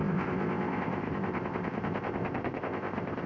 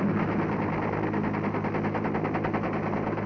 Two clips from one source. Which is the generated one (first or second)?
first